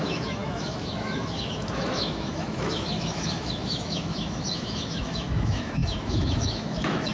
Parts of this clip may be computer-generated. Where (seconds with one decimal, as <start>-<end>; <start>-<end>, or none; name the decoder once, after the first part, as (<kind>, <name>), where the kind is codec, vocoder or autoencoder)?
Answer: 0.0-7.1 (autoencoder, DAC-VAE)